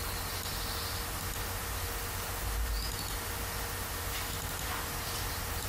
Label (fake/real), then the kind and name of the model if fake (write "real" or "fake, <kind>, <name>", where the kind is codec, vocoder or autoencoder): real